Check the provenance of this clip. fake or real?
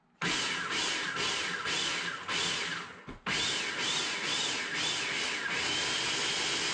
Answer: real